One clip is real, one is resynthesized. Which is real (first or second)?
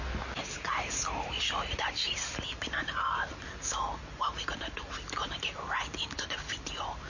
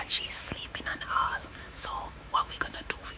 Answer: first